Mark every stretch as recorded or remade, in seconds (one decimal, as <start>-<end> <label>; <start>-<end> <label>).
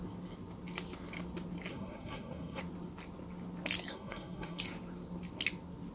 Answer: 0.0-1.7 recorded; 1.7-2.6 remade; 2.6-3.9 recorded; 3.9-4.6 remade; 4.6-5.9 recorded